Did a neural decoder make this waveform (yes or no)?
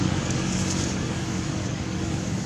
yes